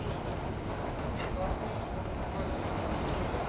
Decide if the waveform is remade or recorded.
recorded